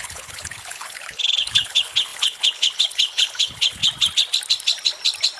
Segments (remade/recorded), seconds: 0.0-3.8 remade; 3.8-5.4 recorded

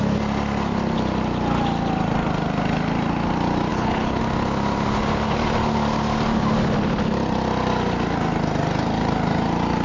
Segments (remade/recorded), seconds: 0.0-3.7 recorded; 3.7-4.2 remade; 4.2-9.8 recorded